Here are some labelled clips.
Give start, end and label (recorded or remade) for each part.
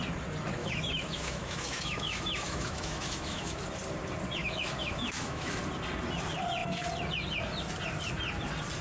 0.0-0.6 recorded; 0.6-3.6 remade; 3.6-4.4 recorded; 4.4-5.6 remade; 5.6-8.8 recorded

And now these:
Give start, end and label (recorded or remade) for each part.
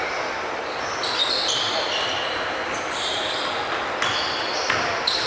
0.0-5.3 recorded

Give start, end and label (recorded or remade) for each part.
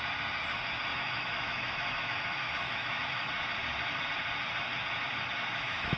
0.0-0.9 recorded; 0.9-3.3 remade; 3.3-5.5 recorded; 5.5-6.0 remade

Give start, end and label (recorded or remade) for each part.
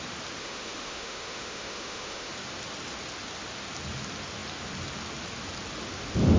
0.0-0.4 recorded; 0.4-2.3 remade; 2.3-6.4 recorded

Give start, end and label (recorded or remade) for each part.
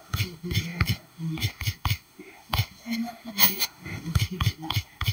0.0-5.1 remade